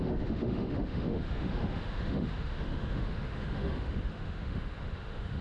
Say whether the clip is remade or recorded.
remade